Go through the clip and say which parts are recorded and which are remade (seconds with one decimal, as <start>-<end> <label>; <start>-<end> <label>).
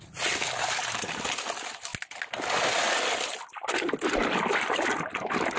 0.0-5.6 recorded